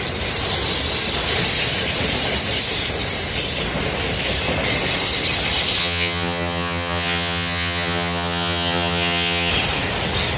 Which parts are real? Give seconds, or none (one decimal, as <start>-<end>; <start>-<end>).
0.0-5.8; 9.5-10.4